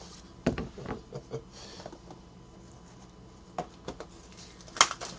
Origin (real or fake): real